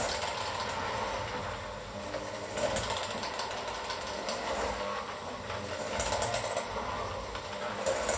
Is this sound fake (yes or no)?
no